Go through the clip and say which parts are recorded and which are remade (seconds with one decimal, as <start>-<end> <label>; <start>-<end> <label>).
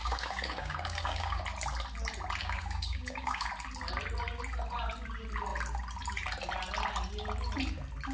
0.0-1.4 remade; 1.4-2.4 recorded; 2.4-3.5 remade; 3.5-8.1 recorded